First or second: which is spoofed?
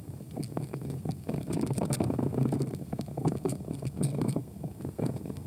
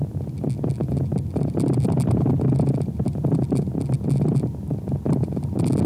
first